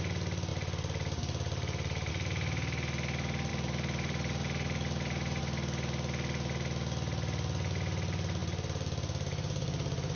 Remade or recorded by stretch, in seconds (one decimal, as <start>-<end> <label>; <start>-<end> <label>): 0.0-0.5 recorded; 0.5-2.1 remade; 2.1-3.5 recorded; 3.5-5.4 remade; 5.4-8.4 recorded; 8.4-10.2 remade